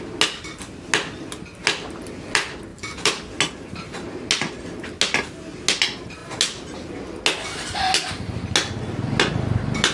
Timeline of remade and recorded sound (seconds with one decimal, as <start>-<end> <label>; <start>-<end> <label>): 0.0-2.7 recorded; 2.7-3.2 remade; 3.2-9.9 recorded